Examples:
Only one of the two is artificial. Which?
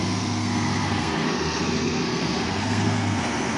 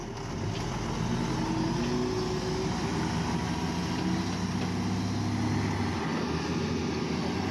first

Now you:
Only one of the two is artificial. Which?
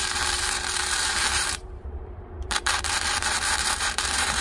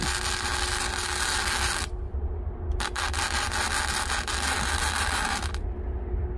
first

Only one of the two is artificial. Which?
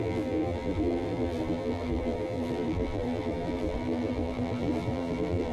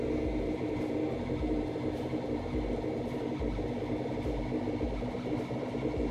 first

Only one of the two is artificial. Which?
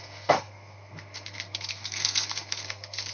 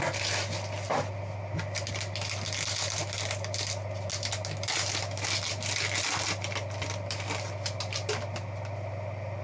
first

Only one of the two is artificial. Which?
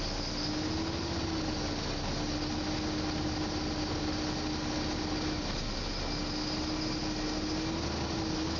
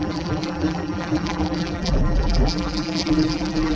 second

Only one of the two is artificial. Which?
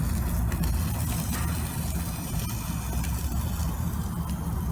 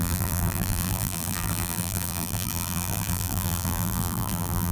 second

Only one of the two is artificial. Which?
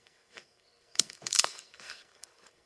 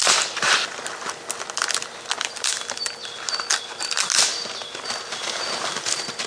first